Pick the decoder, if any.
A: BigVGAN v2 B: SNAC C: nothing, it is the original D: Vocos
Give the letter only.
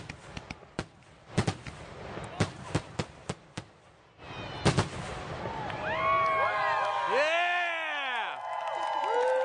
C